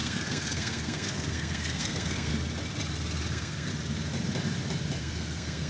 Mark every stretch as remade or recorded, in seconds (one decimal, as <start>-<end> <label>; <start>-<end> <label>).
0.0-2.3 remade; 2.3-3.3 recorded; 3.3-3.7 remade; 3.7-5.0 recorded; 5.0-5.7 remade

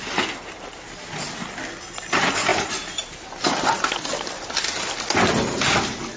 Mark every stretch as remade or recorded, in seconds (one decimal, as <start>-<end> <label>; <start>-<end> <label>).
0.0-6.2 recorded

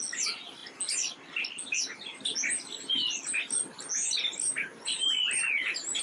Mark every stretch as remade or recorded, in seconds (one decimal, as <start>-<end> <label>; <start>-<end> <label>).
0.0-6.0 recorded

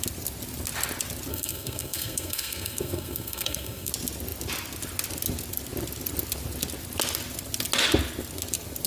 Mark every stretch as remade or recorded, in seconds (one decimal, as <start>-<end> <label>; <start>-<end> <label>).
0.0-1.3 recorded; 1.3-3.9 remade; 3.9-8.9 recorded

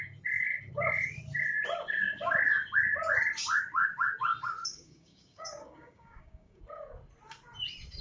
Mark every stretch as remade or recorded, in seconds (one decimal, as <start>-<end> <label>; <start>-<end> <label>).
0.0-4.7 recorded; 4.7-6.6 remade; 6.6-8.0 recorded

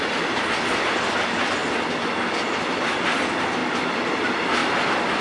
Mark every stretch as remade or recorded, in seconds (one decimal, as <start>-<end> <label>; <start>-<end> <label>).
0.0-5.2 recorded

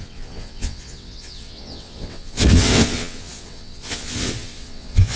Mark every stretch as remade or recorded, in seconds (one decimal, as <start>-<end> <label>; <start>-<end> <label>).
0.0-5.2 remade